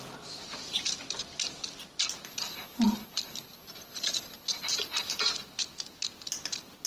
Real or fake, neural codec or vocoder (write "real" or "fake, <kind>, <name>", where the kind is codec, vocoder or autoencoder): real